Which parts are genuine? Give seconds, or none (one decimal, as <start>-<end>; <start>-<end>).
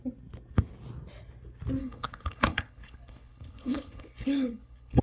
0.0-1.8